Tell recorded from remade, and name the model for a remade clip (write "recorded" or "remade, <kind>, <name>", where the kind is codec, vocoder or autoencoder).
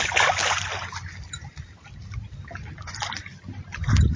recorded